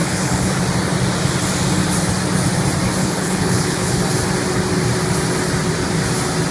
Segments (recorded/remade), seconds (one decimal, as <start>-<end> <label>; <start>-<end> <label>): 0.0-0.5 remade; 0.5-3.0 recorded; 3.0-4.0 remade; 4.0-6.5 recorded